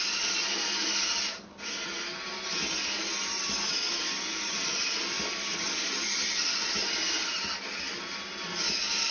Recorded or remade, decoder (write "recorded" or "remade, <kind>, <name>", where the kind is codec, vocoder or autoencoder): recorded